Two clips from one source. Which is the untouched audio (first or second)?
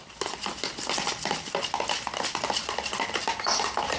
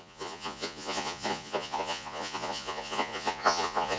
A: first